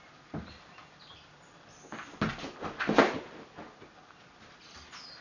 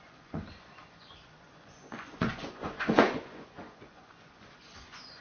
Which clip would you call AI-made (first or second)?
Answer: second